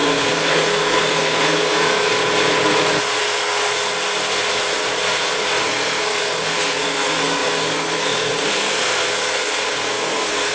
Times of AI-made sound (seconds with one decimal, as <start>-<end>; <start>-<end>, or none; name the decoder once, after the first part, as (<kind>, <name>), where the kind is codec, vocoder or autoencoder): 0.0-2.1 (codec, SNAC); 3.2-3.6; 5.6-10.5